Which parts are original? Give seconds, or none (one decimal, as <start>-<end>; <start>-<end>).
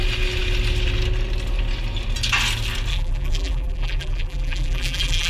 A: 0.0-2.9